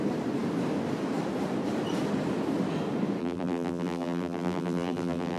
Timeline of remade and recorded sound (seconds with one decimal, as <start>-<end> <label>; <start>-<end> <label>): 0.0-3.2 recorded; 3.2-5.4 remade